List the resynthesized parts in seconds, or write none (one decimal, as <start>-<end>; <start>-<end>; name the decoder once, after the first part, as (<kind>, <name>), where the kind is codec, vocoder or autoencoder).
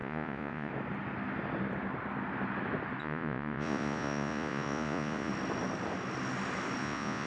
0.0-0.7 (vocoder, Vocos); 3.0-5.3; 6.8-7.3